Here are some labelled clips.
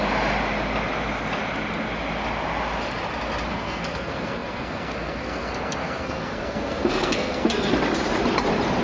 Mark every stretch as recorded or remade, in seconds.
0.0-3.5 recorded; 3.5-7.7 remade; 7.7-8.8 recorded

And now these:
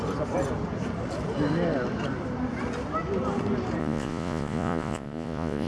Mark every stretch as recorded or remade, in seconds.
0.0-3.8 recorded; 3.8-5.7 remade

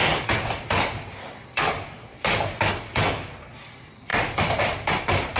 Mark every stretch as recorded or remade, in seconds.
0.0-5.4 recorded

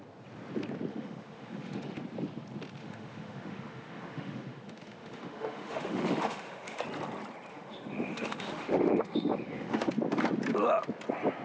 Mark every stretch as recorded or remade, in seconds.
0.0-0.9 recorded; 0.9-2.0 remade; 2.0-2.8 recorded; 2.8-6.8 remade; 6.8-7.5 recorded; 7.5-9.9 remade; 9.9-11.4 recorded

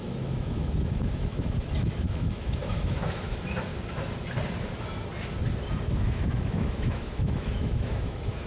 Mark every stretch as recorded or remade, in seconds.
0.0-3.7 remade; 3.7-6.0 recorded; 6.0-8.5 remade